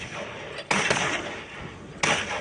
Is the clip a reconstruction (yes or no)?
no